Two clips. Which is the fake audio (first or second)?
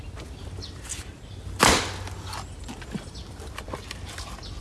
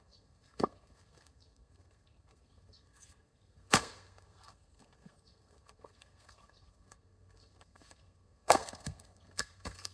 second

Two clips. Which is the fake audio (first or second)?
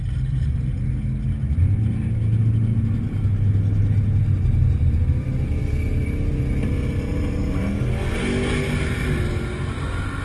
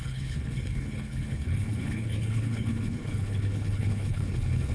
second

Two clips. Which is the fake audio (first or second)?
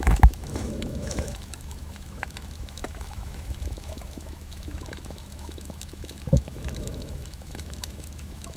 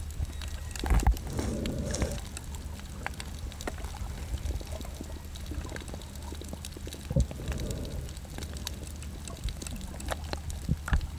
first